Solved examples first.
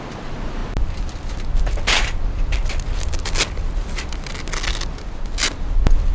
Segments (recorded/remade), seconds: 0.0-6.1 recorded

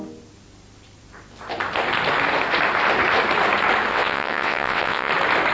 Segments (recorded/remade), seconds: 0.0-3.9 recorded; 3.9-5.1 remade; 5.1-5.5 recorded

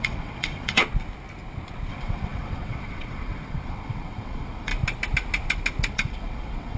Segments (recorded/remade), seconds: 0.0-0.8 remade; 0.8-1.9 recorded; 1.9-4.7 remade; 4.7-5.9 recorded; 5.9-6.8 remade

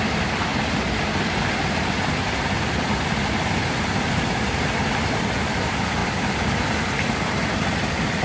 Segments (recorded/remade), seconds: 0.0-8.2 recorded

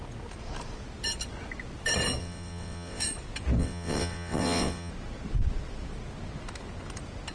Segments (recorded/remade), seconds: 0.0-2.2 recorded; 2.2-3.0 remade; 3.0-3.6 recorded; 3.6-4.9 remade; 4.9-7.3 recorded

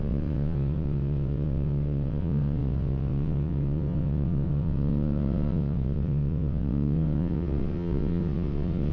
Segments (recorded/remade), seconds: 0.0-8.9 remade

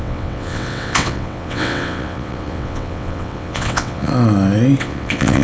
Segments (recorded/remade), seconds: 0.0-4.1 remade; 4.1-4.8 recorded; 4.8-5.4 remade